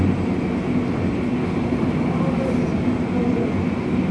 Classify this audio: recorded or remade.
recorded